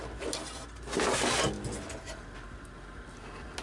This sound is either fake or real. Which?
real